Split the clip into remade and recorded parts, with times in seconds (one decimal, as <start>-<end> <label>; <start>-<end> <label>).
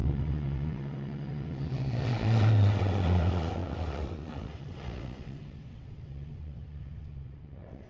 0.0-7.9 remade